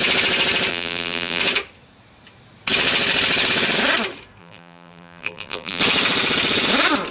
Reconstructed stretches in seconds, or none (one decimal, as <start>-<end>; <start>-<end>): 0.7-1.4; 4.4-5.8